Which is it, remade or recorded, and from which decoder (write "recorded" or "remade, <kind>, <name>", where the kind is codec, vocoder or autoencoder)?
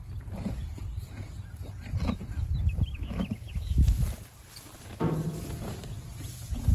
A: recorded